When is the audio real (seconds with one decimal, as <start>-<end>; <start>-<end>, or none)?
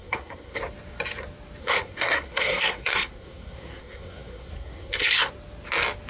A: 0.6-1.6; 5.3-6.1